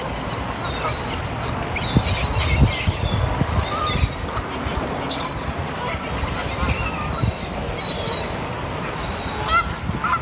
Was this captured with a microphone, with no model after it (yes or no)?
yes